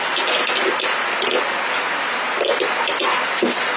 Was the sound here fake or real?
real